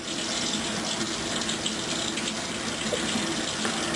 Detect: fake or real real